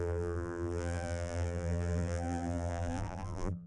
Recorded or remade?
remade